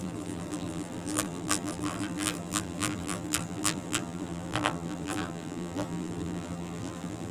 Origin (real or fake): fake